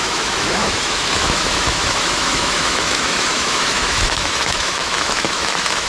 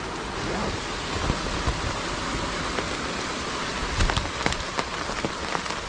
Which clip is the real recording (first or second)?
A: second